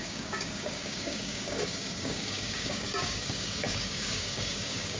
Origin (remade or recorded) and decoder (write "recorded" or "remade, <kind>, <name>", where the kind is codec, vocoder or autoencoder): remade, codec, DAC